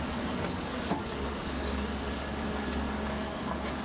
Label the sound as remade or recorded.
remade